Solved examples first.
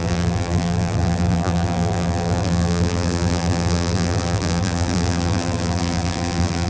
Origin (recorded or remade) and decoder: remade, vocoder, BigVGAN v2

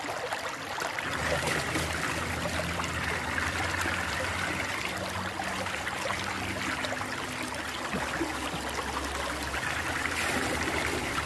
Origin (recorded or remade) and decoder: recorded